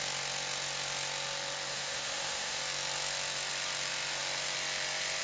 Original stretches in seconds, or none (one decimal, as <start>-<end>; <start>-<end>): 0.0-1.7; 2.6-5.2